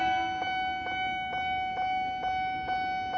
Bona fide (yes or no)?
yes